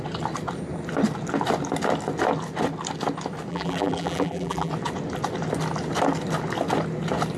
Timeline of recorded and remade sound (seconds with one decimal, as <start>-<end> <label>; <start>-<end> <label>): 0.0-3.5 recorded; 3.5-4.7 remade; 4.7-7.4 recorded

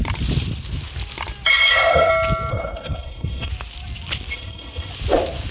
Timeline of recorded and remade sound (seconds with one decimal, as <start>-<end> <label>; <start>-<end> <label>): 0.0-1.5 recorded; 1.5-2.1 remade; 2.1-2.5 recorded; 2.5-3.5 remade; 3.5-4.3 recorded; 4.3-4.9 remade; 4.9-5.5 recorded

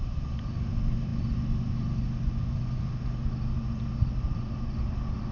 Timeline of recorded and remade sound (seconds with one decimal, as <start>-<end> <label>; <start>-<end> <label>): 0.0-5.3 recorded

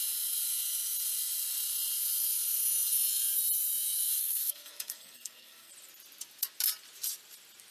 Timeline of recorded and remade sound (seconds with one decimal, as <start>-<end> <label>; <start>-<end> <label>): 0.0-4.2 recorded; 4.2-5.7 remade; 5.7-7.7 recorded

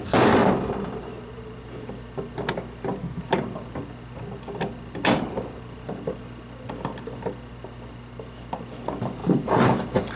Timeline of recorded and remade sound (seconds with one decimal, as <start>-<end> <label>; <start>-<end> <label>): 0.0-10.2 recorded

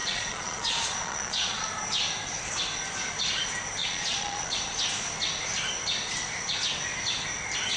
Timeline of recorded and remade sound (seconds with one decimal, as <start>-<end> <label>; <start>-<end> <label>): 0.0-1.7 remade; 1.7-3.8 recorded; 3.8-4.6 remade; 4.6-7.8 recorded

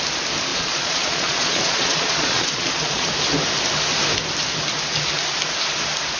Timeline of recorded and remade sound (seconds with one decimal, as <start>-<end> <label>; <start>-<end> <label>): 0.0-0.5 recorded; 0.5-3.1 remade; 3.1-6.2 recorded